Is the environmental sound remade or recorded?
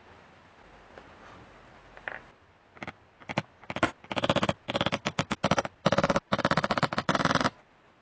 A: recorded